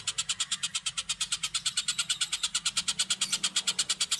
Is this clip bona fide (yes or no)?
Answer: yes